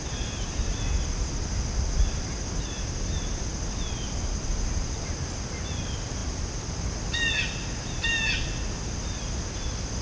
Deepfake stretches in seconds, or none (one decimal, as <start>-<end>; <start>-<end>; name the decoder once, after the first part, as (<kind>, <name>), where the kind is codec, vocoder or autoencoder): none